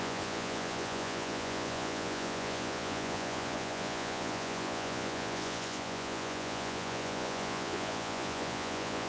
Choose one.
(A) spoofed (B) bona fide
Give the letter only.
A